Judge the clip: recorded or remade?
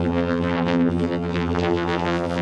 remade